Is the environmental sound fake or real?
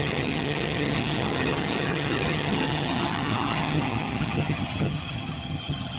fake